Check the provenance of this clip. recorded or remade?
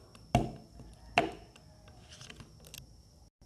recorded